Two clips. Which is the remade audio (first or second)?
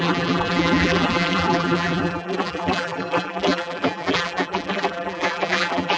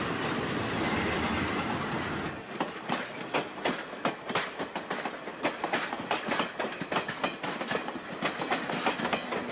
first